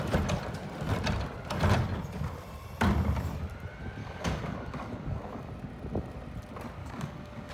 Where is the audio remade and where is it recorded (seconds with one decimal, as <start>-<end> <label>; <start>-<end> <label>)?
0.0-4.0 recorded; 4.0-5.5 remade; 5.5-6.8 recorded; 6.8-7.5 remade